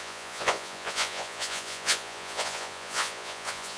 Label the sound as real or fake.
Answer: fake